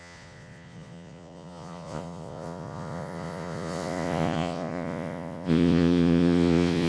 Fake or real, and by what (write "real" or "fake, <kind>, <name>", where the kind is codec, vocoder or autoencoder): fake, vocoder, Vocos